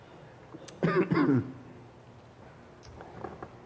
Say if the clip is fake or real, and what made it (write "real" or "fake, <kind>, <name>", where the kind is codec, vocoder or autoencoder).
real